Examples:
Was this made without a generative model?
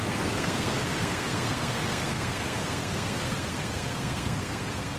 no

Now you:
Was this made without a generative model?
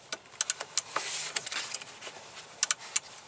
yes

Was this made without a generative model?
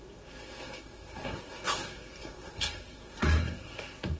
no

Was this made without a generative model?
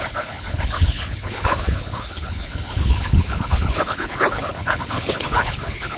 no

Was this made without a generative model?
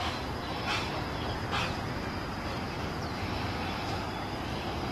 no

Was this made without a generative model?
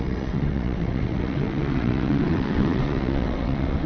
no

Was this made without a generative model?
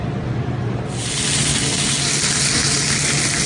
yes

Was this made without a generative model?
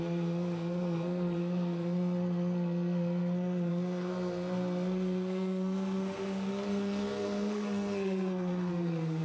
no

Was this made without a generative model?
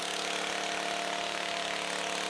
yes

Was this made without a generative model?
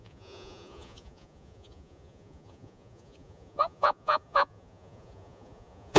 no